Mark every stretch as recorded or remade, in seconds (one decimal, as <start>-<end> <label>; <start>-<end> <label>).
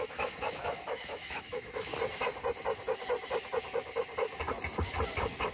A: 0.0-1.9 remade; 1.9-5.5 recorded